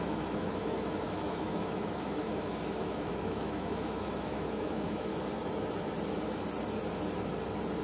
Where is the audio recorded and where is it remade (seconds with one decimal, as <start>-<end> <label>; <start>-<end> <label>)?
0.0-5.1 remade; 5.1-7.8 recorded